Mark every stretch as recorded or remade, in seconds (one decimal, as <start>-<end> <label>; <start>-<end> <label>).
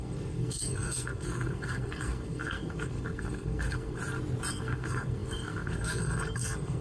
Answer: 0.0-4.0 remade; 4.0-4.5 recorded; 4.5-6.8 remade